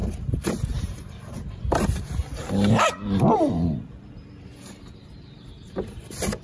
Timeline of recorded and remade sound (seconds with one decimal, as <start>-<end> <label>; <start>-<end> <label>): 0.0-1.6 remade; 1.6-2.2 recorded; 2.2-6.0 remade; 6.0-6.4 recorded